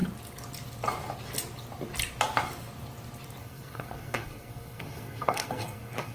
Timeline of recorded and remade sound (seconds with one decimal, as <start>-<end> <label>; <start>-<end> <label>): 0.0-3.4 recorded; 3.4-6.1 remade